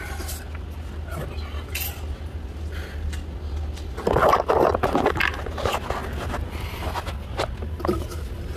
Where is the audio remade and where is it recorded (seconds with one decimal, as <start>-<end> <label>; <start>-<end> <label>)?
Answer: 0.0-8.6 recorded